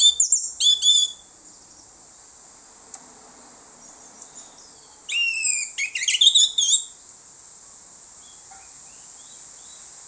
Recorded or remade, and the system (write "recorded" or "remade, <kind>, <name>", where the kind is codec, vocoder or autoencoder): recorded